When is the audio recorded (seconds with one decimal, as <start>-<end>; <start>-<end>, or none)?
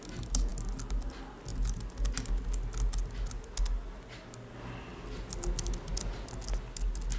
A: 0.0-7.2